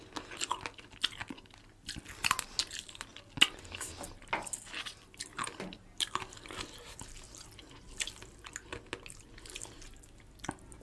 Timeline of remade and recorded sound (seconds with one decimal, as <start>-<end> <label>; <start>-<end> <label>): 0.0-10.8 recorded